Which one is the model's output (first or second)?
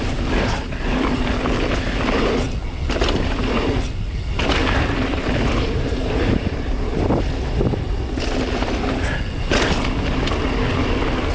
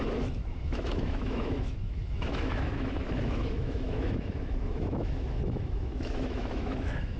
second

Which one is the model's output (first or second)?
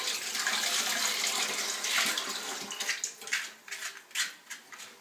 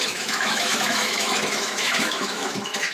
second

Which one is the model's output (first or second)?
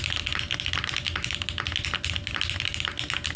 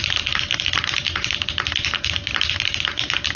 second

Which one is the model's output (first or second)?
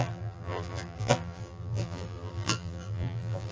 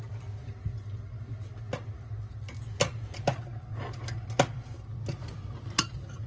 first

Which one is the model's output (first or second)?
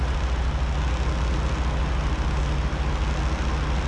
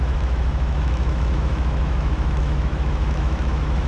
second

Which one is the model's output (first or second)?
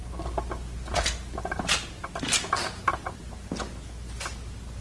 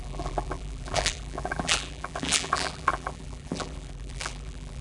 second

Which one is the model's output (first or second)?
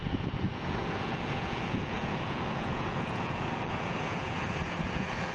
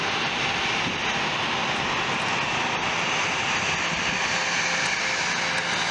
first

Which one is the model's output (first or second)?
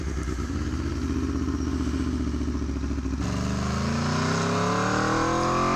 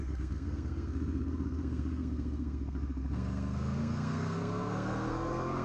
second